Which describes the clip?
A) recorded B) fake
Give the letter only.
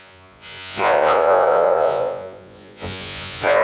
B